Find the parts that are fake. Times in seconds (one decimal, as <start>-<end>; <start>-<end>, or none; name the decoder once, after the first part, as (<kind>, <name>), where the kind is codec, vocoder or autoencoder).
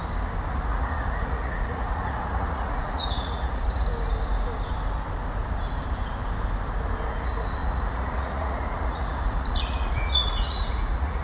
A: 0.5-3.9 (vocoder, Vocos); 7.1-11.2